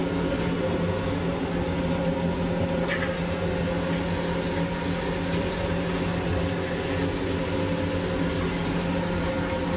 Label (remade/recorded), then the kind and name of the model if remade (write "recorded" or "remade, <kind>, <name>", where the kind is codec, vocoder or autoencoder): recorded